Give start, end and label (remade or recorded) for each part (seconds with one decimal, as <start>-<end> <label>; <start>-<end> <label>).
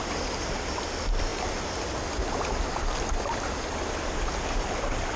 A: 0.0-5.2 recorded